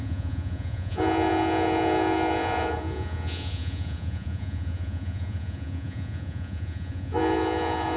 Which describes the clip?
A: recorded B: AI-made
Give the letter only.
B